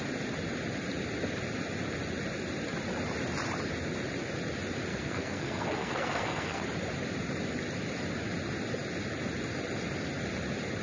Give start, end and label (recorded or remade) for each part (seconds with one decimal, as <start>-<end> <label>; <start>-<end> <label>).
0.0-4.9 recorded; 4.9-6.6 remade; 6.6-10.8 recorded